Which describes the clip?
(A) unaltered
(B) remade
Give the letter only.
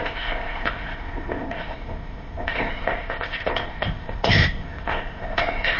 B